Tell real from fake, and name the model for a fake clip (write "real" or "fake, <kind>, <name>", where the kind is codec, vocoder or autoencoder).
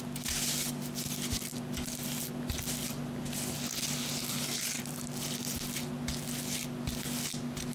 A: real